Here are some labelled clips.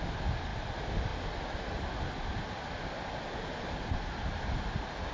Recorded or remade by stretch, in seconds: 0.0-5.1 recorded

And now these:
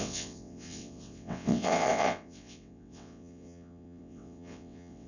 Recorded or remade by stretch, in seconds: 0.0-5.1 remade

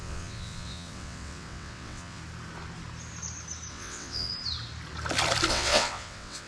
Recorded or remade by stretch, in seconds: 0.0-2.2 remade; 2.2-3.7 recorded; 3.7-4.3 remade; 4.3-5.5 recorded; 5.5-6.5 remade

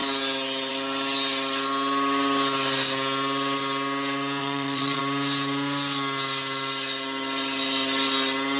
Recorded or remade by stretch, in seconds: 0.0-4.4 recorded; 4.4-5.0 remade; 5.0-8.6 recorded